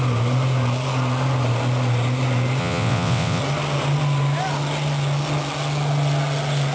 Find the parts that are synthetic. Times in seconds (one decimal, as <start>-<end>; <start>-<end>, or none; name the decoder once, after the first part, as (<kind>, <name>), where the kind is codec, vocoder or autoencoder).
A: 2.6-3.4 (vocoder, WaveNeXt)